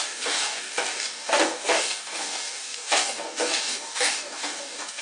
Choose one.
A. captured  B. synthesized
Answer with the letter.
B